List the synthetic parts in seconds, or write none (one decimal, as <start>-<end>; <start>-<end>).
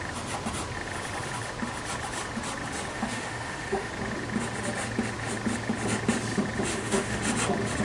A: 2.9-3.9; 6.7-7.2